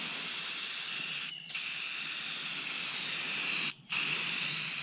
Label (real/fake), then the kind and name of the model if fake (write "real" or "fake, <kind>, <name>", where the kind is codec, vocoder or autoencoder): real